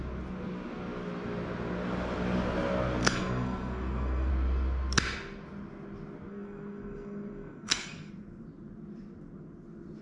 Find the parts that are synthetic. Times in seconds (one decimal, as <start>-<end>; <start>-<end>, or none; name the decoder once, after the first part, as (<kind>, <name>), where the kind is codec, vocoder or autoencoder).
3.0-4.3 (codec, SNAC); 6.3-8.1